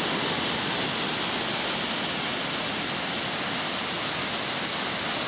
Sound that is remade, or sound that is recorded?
recorded